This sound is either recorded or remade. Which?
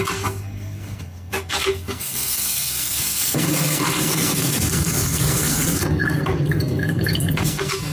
remade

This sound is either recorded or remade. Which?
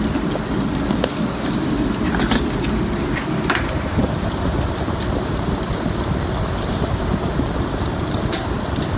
recorded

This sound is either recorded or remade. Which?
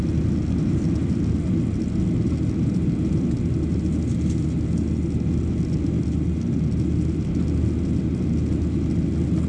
recorded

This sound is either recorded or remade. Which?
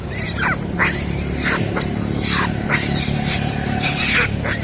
recorded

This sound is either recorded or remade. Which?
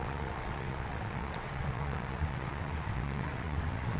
remade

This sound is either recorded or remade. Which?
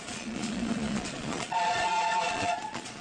remade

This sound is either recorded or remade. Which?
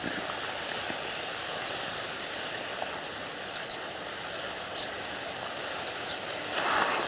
recorded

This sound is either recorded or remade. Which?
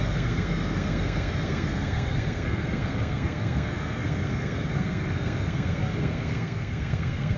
remade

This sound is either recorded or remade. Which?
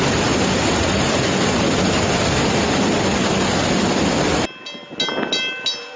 recorded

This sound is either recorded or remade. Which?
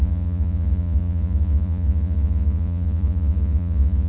remade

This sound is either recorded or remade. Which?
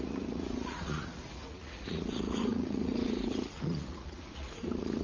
remade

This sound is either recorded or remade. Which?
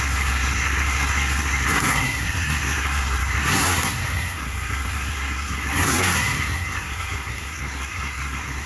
remade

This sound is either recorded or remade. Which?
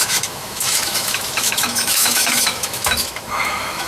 remade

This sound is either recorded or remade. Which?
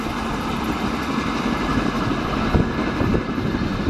recorded